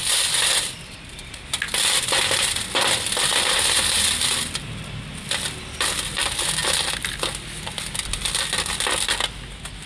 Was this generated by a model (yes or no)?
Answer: no